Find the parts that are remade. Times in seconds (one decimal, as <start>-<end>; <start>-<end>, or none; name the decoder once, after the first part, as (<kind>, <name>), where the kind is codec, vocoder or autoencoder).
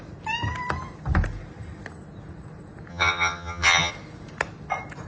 2.9-3.9 (vocoder, HiFi-GAN)